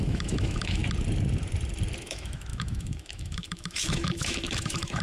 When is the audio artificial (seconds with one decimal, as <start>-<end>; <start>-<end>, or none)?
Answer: 0.0-0.8; 2.0-5.0